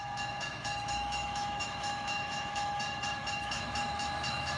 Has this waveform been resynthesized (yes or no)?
yes